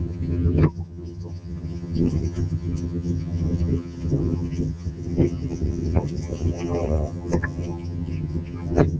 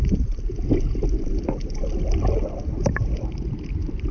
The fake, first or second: first